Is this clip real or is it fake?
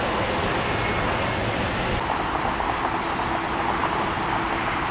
real